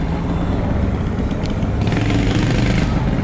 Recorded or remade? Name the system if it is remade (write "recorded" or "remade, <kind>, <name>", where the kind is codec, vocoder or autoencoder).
recorded